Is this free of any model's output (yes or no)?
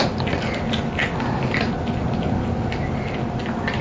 yes